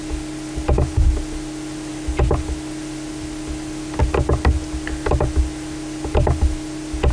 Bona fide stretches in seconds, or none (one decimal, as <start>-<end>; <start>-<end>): 0.0-7.1